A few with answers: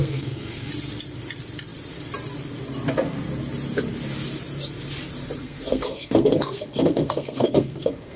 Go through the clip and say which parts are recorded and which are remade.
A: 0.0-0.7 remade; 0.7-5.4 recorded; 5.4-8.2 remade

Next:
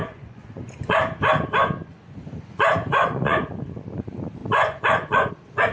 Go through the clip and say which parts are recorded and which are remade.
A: 0.0-1.0 remade; 1.0-1.9 recorded; 1.9-3.5 remade; 3.5-4.4 recorded; 4.4-5.3 remade; 5.3-5.7 recorded

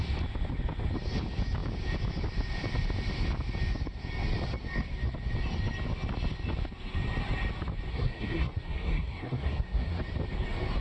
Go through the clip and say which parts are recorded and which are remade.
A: 0.0-7.9 recorded; 7.9-10.0 remade; 10.0-10.8 recorded

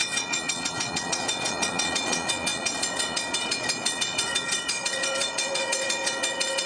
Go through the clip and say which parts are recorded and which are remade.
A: 0.0-6.7 remade

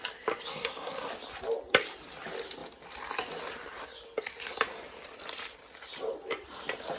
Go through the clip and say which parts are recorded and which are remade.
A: 0.0-0.5 recorded; 0.5-1.1 remade; 1.1-7.0 recorded

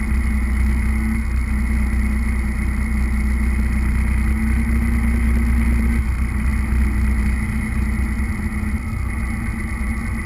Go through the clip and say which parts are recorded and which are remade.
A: 0.0-10.3 recorded